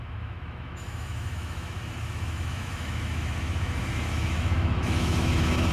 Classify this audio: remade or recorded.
remade